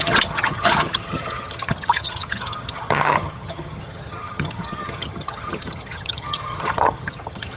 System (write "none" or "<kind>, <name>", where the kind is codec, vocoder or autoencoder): vocoder, HiFi-GAN